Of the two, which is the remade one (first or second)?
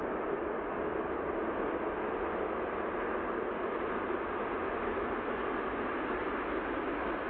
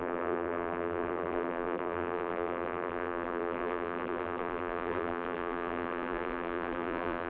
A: second